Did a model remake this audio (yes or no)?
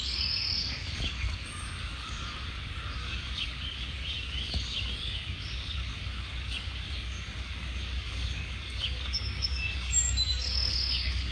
yes